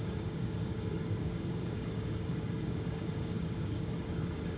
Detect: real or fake fake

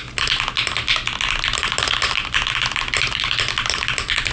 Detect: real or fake real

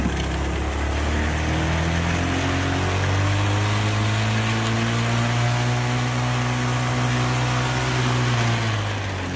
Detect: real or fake real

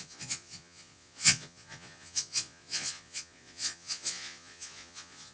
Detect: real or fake fake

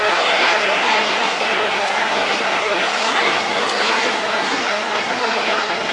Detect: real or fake fake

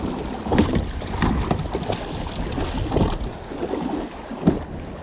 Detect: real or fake real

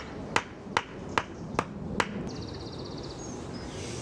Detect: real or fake real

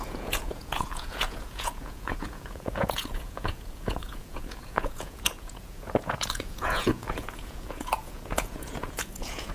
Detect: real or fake fake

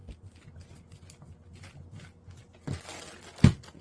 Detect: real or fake real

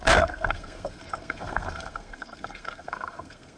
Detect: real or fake fake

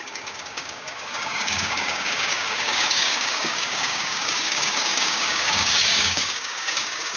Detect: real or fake fake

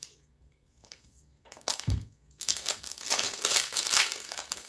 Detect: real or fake fake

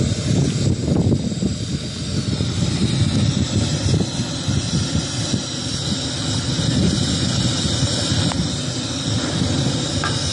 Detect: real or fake real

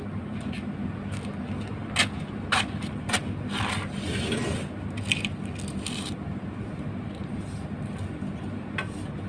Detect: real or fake real